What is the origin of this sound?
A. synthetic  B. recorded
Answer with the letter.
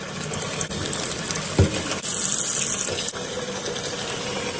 B